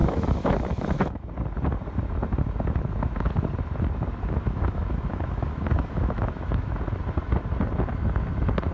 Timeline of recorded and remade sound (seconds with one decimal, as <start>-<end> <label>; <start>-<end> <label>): 0.0-1.3 remade; 1.3-4.4 recorded; 4.4-6.7 remade; 6.7-8.7 recorded